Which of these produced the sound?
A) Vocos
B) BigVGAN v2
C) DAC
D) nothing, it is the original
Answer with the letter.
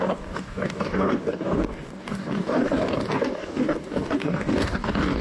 C